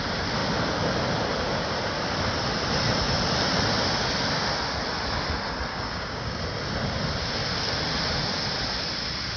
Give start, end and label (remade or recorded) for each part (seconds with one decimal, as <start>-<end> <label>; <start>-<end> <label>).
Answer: 0.0-5.7 recorded; 5.7-6.4 remade; 6.4-9.4 recorded